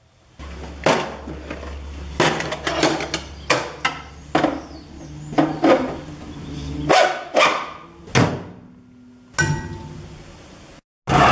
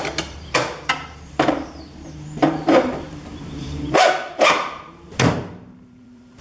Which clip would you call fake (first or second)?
second